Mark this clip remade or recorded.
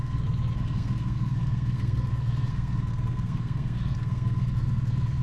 remade